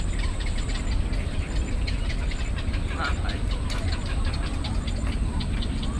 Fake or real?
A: fake